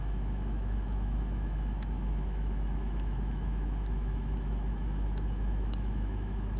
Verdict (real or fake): fake